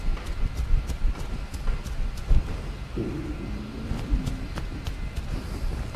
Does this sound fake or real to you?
real